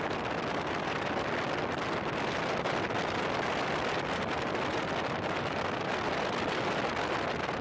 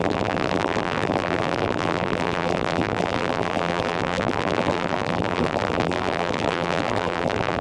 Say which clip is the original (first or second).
first